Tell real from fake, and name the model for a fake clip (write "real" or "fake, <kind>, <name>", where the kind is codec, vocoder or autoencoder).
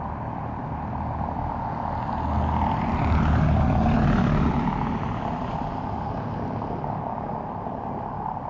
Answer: real